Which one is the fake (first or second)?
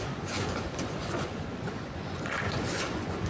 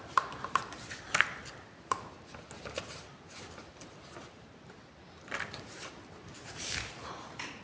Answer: first